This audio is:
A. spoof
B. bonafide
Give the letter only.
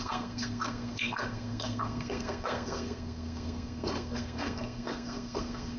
A